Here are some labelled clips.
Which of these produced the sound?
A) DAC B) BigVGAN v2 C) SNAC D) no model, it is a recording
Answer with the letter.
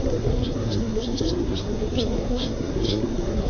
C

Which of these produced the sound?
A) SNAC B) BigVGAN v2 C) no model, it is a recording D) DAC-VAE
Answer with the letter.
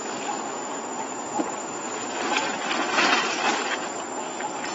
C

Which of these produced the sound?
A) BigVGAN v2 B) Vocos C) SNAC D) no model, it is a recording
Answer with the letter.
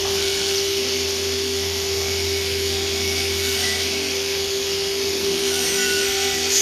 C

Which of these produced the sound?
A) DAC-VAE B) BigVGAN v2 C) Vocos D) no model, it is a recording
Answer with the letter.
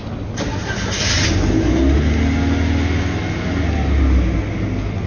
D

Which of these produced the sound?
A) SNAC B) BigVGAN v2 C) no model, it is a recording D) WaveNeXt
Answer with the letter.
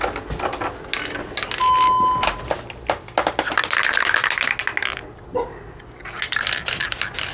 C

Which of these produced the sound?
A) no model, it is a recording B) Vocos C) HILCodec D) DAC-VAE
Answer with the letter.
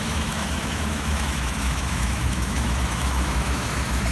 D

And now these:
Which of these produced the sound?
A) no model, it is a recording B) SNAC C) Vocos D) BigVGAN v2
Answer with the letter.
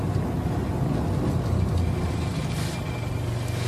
A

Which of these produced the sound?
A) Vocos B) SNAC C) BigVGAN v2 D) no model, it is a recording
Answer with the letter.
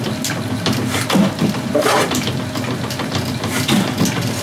D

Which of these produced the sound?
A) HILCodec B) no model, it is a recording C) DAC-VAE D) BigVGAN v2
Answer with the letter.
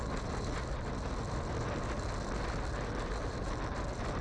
B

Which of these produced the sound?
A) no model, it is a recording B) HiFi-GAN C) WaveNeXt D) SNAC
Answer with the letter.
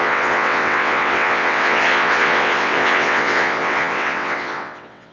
C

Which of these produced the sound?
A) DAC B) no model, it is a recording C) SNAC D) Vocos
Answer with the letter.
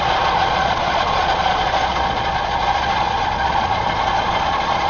D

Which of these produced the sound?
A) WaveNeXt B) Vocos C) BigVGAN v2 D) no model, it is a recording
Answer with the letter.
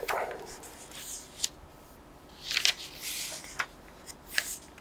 D